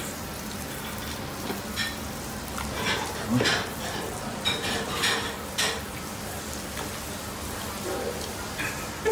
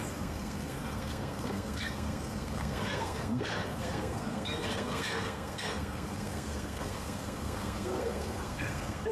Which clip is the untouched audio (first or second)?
first